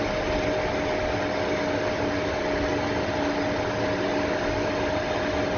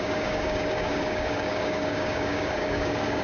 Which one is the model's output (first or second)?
second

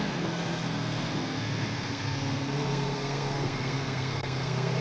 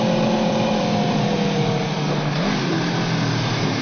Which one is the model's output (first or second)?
first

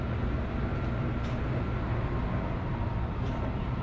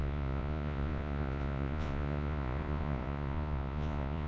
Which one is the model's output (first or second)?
second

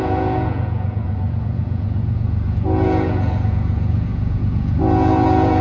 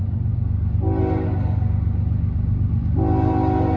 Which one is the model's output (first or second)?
first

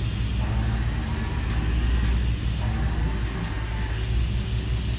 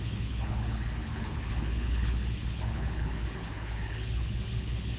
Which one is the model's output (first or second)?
second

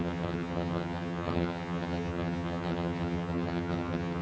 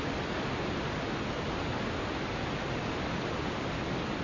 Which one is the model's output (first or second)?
first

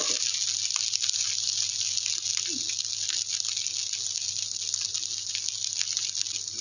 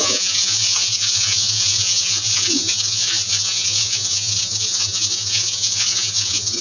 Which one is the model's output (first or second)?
second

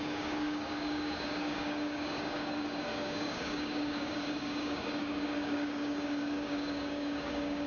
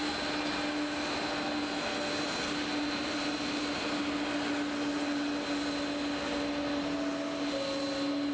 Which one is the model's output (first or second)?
first